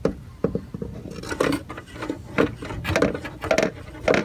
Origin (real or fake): real